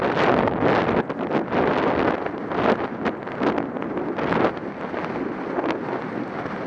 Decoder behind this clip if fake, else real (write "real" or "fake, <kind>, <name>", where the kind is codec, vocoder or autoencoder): real